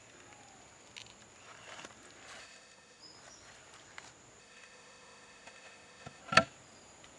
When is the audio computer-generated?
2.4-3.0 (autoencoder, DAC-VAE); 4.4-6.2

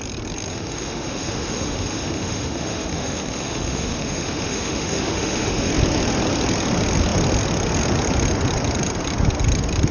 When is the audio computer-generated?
0.5-5.7 (autoencoder, DAC-VAE)